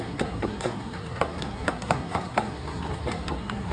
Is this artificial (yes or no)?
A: yes